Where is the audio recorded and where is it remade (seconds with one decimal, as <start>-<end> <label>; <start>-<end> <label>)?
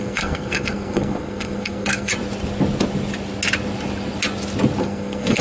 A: 0.0-2.1 remade; 2.1-4.8 recorded; 4.8-5.4 remade